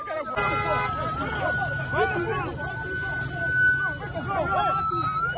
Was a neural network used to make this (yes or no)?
no